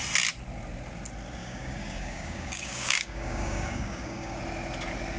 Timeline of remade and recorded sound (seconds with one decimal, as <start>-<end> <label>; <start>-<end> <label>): 0.0-1.4 recorded; 1.4-4.4 remade; 4.4-5.2 recorded